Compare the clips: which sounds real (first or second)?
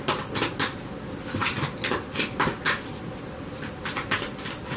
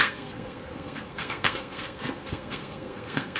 first